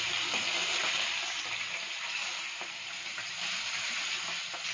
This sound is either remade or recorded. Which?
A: recorded